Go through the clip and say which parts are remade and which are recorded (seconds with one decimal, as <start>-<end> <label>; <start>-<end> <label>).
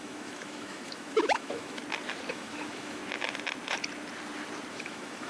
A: 0.0-1.8 remade; 1.8-2.3 recorded; 2.3-3.0 remade; 3.0-4.7 recorded; 4.7-5.3 remade